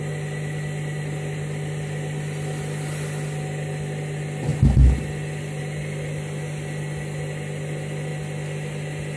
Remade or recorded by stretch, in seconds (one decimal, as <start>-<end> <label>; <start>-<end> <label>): 0.0-9.2 recorded